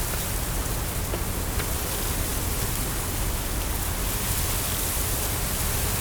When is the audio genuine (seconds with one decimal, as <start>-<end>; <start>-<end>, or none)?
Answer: 0.0-6.0

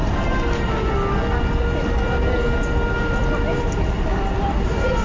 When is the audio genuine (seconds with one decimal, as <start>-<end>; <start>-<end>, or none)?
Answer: 0.0-3.0

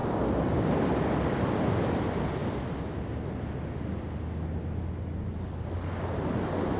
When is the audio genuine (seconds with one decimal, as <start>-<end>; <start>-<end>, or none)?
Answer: 0.0-6.8

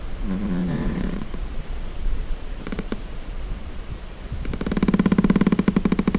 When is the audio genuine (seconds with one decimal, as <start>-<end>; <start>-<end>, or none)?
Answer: 0.0-0.6; 4.3-6.2